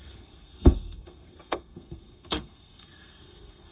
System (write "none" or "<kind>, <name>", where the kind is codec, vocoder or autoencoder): codec, SNAC